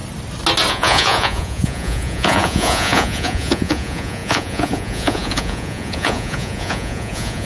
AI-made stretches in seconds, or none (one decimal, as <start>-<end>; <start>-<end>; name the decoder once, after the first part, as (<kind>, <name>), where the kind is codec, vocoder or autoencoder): 0.7-7.4 (vocoder, Vocos)